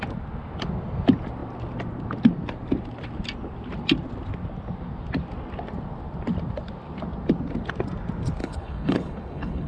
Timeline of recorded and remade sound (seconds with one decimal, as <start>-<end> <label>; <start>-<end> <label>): 0.0-8.4 recorded; 8.4-9.7 remade